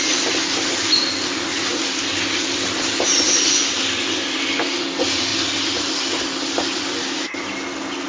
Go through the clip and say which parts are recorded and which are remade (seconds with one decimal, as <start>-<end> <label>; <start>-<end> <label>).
0.0-8.1 recorded

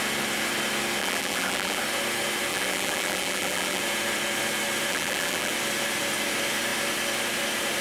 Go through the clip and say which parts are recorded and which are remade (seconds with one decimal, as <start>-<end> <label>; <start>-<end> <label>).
0.0-1.0 recorded; 1.0-1.8 remade; 1.8-2.5 recorded; 2.5-3.8 remade; 3.8-4.9 recorded; 4.9-5.5 remade; 5.5-7.8 recorded

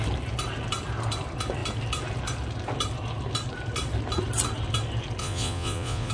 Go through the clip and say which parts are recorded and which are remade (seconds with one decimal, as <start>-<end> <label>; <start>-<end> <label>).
0.0-5.2 recorded; 5.2-6.1 remade

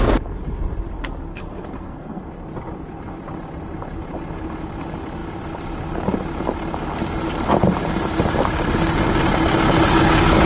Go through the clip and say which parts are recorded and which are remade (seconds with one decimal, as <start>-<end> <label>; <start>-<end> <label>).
0.0-1.3 recorded; 1.3-2.2 remade; 2.2-10.5 recorded

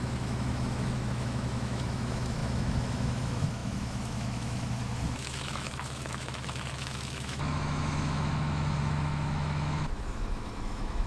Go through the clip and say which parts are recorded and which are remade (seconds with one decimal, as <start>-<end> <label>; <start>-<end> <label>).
0.0-11.1 remade